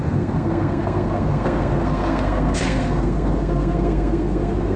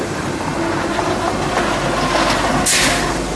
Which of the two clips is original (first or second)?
second